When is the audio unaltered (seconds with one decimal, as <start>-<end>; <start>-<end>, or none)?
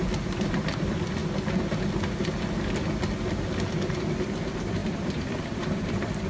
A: 1.2-4.2